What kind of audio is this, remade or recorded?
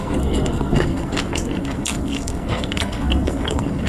remade